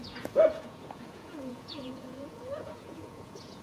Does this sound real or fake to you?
fake